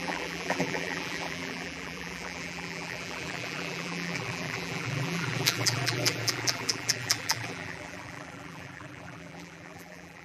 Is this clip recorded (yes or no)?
no